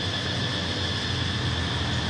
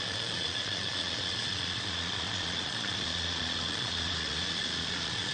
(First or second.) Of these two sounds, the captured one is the first